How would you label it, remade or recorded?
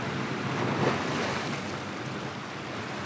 recorded